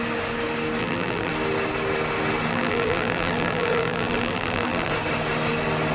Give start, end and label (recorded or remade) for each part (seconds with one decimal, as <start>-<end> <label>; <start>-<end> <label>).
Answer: 0.0-0.8 recorded; 0.8-1.3 remade; 1.3-2.5 recorded; 2.5-4.9 remade; 4.9-5.9 recorded